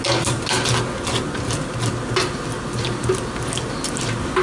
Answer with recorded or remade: recorded